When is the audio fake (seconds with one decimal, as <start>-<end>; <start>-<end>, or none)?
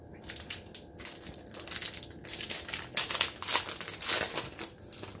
none